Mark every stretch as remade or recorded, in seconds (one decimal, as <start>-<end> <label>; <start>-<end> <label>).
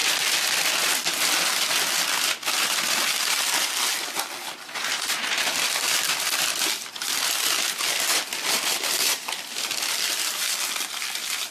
0.0-0.8 remade; 0.8-11.5 recorded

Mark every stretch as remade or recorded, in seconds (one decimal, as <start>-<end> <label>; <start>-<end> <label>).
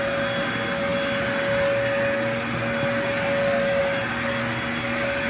0.0-5.3 recorded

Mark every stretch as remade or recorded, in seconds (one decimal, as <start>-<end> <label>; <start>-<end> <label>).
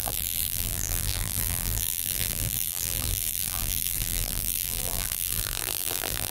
0.0-6.3 remade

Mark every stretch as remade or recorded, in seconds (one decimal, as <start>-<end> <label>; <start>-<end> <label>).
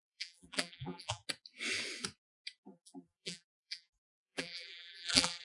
0.0-1.2 remade; 1.2-2.6 recorded; 2.6-5.4 remade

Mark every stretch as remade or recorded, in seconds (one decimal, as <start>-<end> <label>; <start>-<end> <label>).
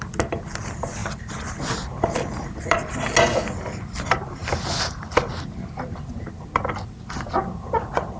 0.0-1.0 recorded; 1.0-1.6 remade; 1.6-4.4 recorded; 4.4-5.3 remade; 5.3-8.2 recorded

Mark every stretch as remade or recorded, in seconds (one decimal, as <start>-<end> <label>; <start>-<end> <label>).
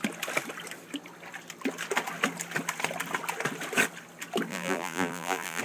0.0-4.5 recorded; 4.5-5.6 remade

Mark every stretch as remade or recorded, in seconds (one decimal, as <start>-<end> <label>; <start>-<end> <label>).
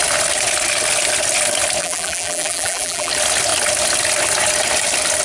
0.0-1.8 recorded; 1.8-3.1 remade; 3.1-5.2 recorded